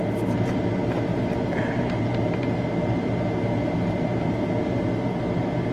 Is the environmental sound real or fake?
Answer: real